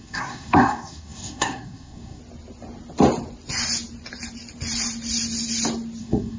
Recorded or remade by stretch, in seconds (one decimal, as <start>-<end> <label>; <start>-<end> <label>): 0.0-2.2 remade; 2.2-6.0 recorded; 6.0-6.4 remade